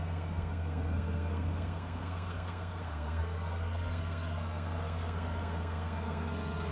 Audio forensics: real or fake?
fake